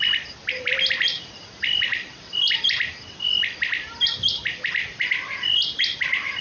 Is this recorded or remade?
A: remade